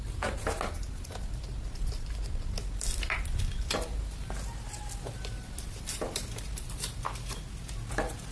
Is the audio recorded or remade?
recorded